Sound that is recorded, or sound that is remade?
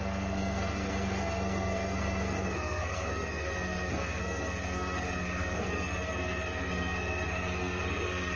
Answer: remade